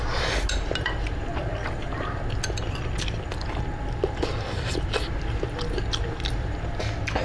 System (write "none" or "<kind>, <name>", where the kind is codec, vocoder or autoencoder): none